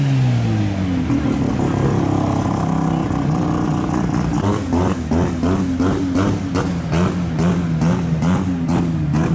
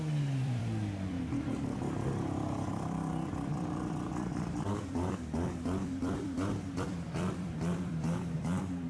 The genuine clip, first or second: first